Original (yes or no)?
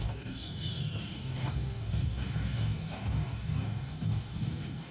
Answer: no